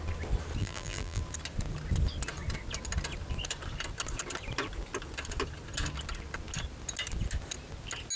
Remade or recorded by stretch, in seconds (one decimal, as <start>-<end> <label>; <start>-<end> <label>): 0.0-0.6 recorded; 0.6-1.2 remade; 1.2-8.2 recorded